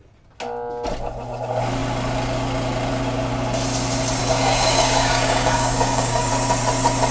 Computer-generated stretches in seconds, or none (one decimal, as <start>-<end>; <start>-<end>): 4.2-6.3